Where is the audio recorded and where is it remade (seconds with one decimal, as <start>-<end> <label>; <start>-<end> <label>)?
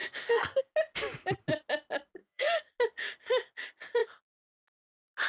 0.0-0.6 remade; 0.6-2.2 recorded; 2.2-2.7 remade; 2.7-5.3 recorded